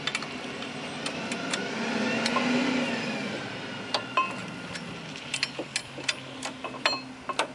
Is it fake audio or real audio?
real